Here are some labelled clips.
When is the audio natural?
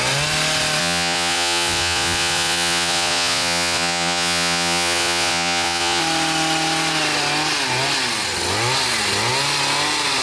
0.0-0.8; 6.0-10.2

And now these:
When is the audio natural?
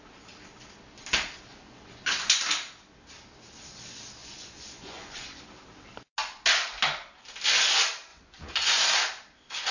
0.0-1.5; 2.4-4.2; 5.4-8.1; 8.8-9.7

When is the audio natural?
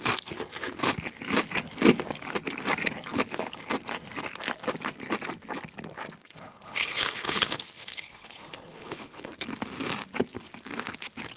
0.0-6.2; 9.3-11.4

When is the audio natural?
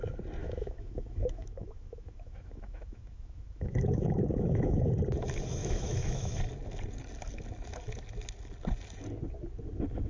0.0-0.4; 4.9-5.6; 6.4-10.1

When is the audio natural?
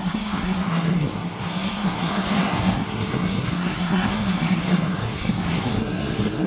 none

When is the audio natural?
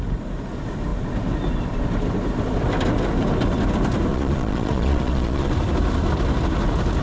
0.0-4.1; 5.5-7.0